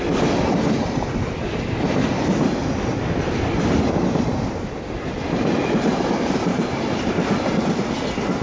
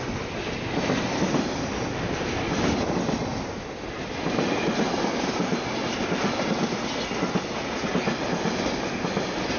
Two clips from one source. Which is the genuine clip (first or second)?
second